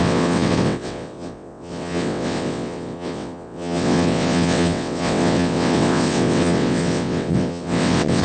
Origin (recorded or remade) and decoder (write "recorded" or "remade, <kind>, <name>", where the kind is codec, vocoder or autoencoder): remade, vocoder, WaveNeXt